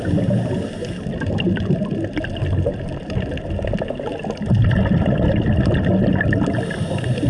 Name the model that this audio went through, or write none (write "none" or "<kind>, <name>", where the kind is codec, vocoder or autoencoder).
none